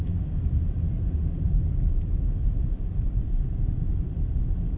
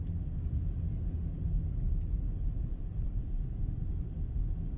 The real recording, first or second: second